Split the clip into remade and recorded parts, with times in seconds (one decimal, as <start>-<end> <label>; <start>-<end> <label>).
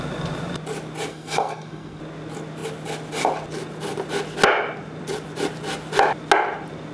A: 0.0-1.1 recorded; 1.1-2.0 remade; 2.0-6.9 recorded